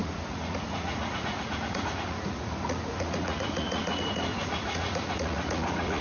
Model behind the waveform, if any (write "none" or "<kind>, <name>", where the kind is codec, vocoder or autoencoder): vocoder, Vocos